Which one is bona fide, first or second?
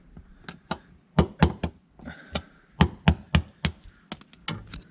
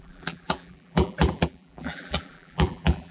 first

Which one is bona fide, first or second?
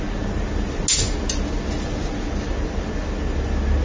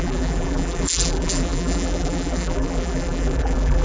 first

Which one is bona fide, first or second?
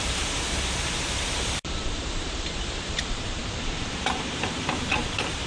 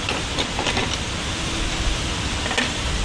second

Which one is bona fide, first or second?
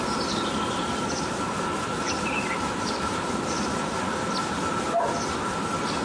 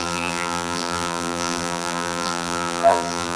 first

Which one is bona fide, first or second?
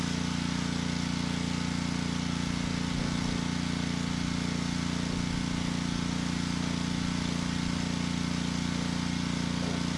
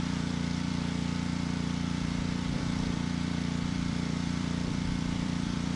first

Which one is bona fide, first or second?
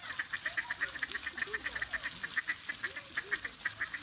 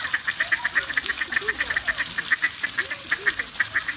first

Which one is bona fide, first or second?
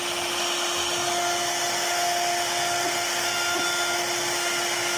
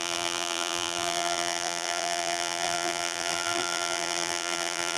first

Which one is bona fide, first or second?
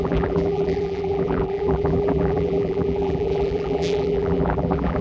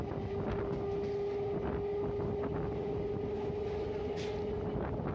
second